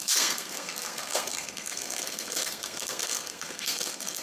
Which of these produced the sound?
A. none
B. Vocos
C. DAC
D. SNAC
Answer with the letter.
D